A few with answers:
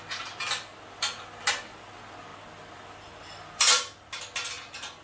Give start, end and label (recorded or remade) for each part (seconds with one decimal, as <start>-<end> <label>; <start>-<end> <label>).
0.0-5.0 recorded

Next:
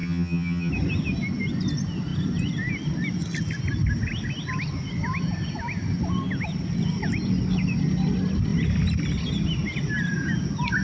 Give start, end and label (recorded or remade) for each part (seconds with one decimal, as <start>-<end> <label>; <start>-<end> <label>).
0.0-0.7 remade; 0.7-10.8 recorded

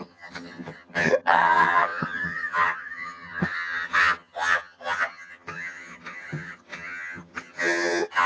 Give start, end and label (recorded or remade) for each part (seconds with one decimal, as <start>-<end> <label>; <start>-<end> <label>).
0.0-8.3 remade

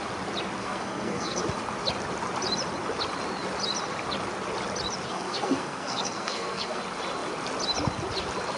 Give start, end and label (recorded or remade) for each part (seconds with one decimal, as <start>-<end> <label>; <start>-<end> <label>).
0.0-0.6 recorded; 0.6-1.4 remade; 1.4-5.1 recorded; 5.1-6.8 remade; 6.8-8.6 recorded

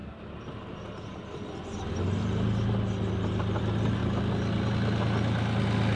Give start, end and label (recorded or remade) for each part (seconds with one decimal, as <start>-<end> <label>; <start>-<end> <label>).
0.0-6.0 recorded

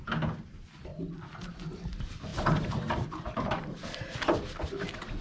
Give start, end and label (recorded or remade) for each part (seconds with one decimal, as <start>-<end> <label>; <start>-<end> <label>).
0.0-2.3 recorded; 2.3-4.0 remade; 4.0-5.2 recorded

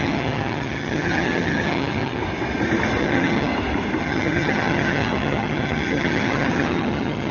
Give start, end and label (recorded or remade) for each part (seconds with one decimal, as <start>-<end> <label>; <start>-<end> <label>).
0.0-2.2 remade; 2.2-3.0 recorded; 3.0-3.5 remade; 3.5-4.0 recorded; 4.0-7.3 remade